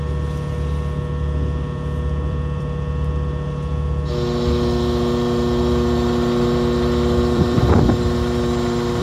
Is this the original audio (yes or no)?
no